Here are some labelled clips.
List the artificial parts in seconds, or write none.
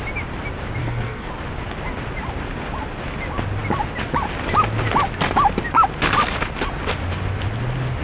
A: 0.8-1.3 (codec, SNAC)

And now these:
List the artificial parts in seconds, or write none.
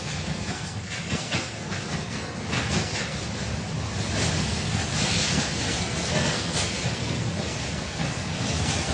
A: 0.0-3.2 (codec, SNAC); 4.4-8.9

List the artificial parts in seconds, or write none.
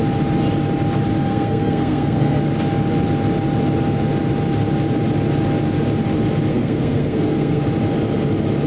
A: 1.2-2.4 (codec, SNAC); 6.5-7.6